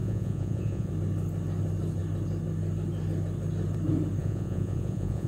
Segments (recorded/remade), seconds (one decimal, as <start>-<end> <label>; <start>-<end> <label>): 0.0-0.9 remade; 0.9-4.2 recorded; 4.2-5.3 remade